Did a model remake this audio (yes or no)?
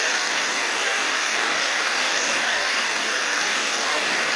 yes